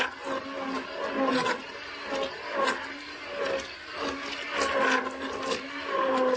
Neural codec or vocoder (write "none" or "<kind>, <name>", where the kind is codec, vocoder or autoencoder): none